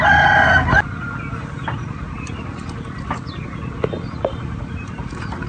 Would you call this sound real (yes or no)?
yes